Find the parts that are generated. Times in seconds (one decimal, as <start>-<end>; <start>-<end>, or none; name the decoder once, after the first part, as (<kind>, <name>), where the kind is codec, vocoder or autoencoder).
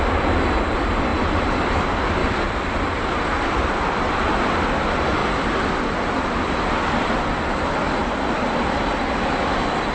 2.2-4.0 (vocoder, BigVGAN v2); 5.2-7.3; 8.0-9.1